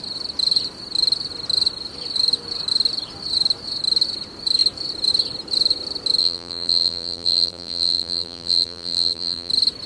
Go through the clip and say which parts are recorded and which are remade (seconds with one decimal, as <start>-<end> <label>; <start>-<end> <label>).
0.0-6.2 recorded; 6.2-9.5 remade; 9.5-9.9 recorded